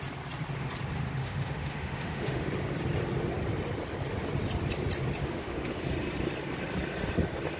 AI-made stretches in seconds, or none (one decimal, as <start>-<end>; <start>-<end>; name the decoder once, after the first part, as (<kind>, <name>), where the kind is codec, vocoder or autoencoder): 1.2-2.5 (autoencoder, DAC-VAE); 5.2-5.8